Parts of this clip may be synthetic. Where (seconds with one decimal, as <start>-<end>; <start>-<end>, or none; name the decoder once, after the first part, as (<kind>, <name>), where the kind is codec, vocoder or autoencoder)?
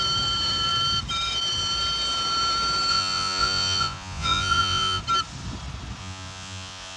2.9-5.0 (vocoder, Vocos); 6.0-7.0